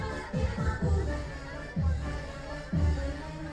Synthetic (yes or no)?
no